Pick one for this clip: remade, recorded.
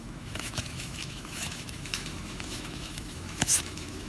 remade